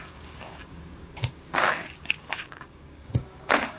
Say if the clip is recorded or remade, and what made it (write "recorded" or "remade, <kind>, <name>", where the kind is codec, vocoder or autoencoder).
remade, codec, DAC